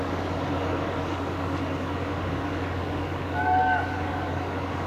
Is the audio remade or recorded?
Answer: remade